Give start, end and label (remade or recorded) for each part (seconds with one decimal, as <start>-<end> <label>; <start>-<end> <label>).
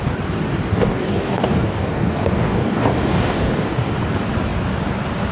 0.0-0.7 recorded; 0.7-3.9 remade; 3.9-5.3 recorded